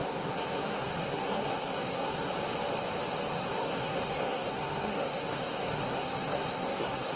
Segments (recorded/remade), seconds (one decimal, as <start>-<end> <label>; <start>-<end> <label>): 0.0-2.3 remade; 2.3-3.4 recorded; 3.4-7.2 remade